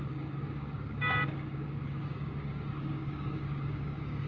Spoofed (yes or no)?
yes